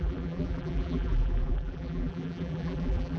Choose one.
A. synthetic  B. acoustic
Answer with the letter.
A